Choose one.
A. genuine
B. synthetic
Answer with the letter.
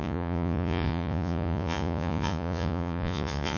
B